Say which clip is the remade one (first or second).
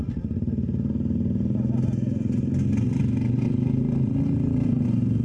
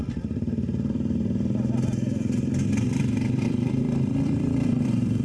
second